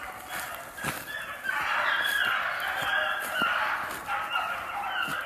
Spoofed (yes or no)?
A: no